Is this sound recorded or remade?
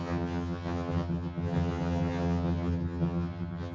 remade